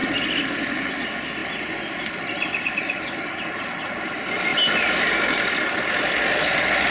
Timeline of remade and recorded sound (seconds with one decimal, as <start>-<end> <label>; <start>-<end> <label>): 0.0-1.4 recorded; 1.4-3.2 remade; 3.2-4.5 recorded; 4.5-5.6 remade; 5.6-6.9 recorded